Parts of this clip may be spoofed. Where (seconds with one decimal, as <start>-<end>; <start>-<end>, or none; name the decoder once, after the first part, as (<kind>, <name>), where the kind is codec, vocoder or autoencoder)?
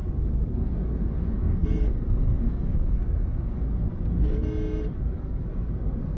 0.0-4.4 (codec, SNAC); 5.0-6.2